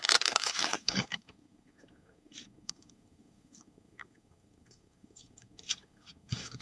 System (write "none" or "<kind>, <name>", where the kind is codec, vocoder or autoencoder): codec, SNAC